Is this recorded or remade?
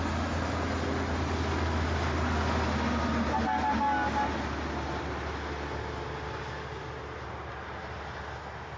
recorded